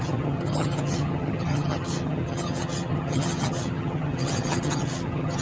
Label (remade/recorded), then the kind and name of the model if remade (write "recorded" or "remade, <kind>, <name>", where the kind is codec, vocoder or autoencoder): remade, vocoder, HiFi-GAN